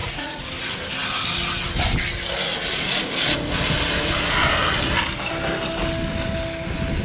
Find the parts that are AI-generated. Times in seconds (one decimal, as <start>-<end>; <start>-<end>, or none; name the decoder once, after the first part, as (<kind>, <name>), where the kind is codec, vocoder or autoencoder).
0.0-0.5 (vocoder, Vocos)